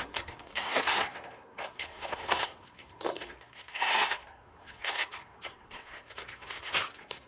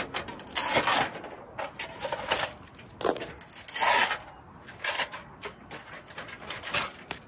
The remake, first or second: first